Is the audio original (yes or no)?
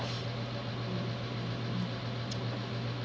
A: yes